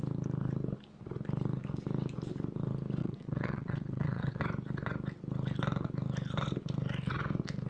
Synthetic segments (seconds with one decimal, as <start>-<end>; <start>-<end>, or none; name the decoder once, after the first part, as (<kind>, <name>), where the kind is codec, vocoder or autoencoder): 3.0-4.4 (vocoder, WaveNeXt)